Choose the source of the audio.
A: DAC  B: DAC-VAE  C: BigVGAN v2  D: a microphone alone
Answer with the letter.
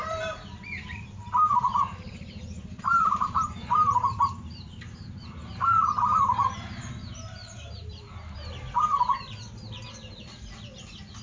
C